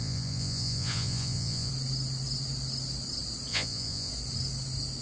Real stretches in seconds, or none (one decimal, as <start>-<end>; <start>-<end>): 1.7-3.5; 4.1-5.0